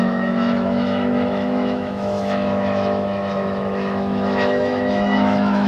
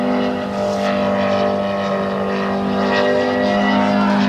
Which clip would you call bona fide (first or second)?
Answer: second